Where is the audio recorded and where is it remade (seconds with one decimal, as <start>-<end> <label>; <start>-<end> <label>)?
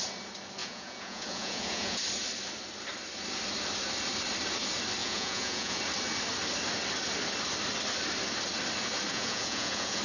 0.0-0.6 recorded; 0.6-2.0 remade; 2.0-5.0 recorded; 5.0-5.8 remade; 5.8-9.1 recorded; 9.1-10.0 remade